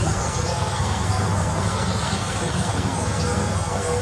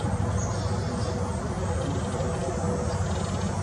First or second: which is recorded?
second